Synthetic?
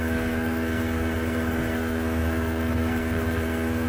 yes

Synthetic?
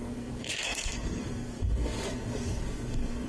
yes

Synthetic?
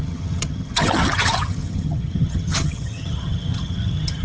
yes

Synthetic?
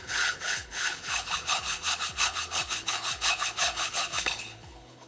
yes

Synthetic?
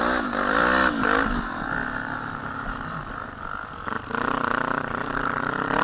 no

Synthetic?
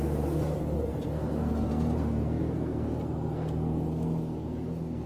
yes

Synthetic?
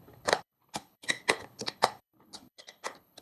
yes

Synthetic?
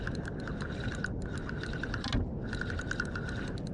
no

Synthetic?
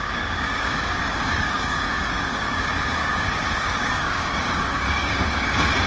yes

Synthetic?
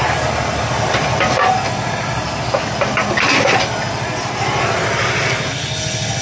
no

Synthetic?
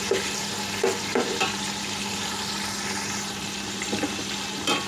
no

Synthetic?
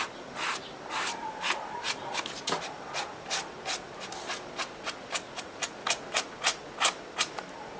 no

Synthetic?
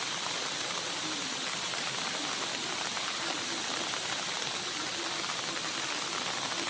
no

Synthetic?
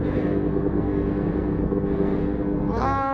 yes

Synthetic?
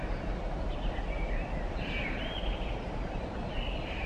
no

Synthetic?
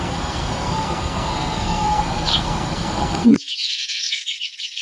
yes